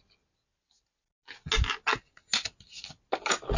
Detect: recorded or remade recorded